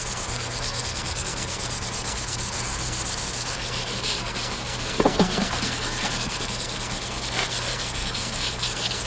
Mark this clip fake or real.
fake